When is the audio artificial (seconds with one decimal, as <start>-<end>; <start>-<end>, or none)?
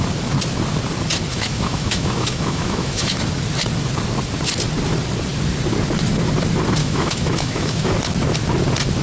1.3-3.2; 6.8-7.9